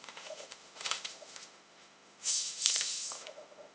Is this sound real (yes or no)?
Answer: no